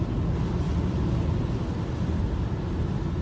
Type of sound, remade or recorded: recorded